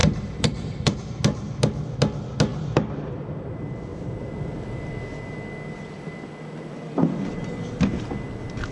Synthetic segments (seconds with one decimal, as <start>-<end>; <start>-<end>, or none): 0.0-1.0; 2.5-3.3